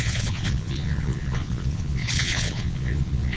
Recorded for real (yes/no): no